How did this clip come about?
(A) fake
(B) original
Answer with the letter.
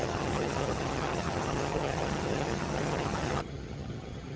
A